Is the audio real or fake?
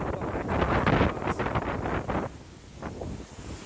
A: real